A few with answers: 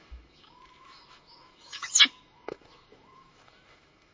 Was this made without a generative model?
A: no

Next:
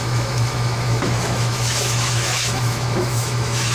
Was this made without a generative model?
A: no